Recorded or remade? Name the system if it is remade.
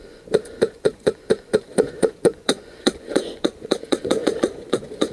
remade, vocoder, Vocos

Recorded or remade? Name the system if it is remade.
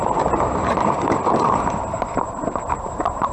remade, vocoder, BigVGAN v2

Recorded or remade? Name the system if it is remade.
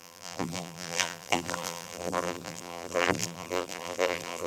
remade, vocoder, BigVGAN v2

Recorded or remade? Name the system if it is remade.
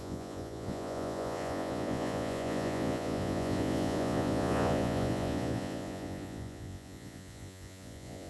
remade, vocoder, Vocos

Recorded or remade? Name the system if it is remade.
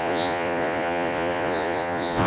remade, vocoder, Vocos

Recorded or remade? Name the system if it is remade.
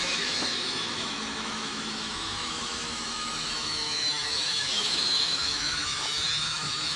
remade, autoencoder, DAC-VAE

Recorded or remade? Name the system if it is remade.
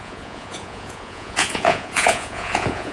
remade, vocoder, Vocos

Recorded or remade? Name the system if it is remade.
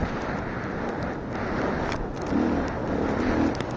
recorded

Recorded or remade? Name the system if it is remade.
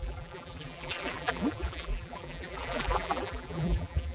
remade, vocoder, BigVGAN v2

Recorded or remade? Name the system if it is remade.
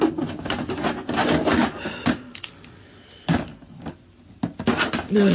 recorded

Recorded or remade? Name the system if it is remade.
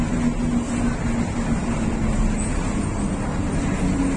recorded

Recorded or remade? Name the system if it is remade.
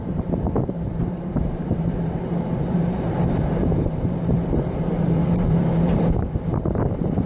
remade, vocoder, BigVGAN v2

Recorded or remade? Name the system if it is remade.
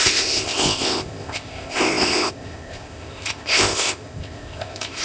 remade, codec, ZipCodec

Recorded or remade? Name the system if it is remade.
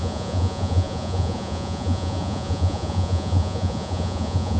remade, vocoder, Vocos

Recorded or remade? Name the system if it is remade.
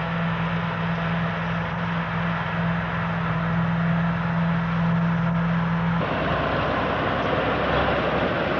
recorded